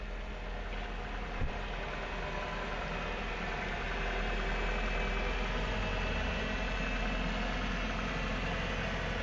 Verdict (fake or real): real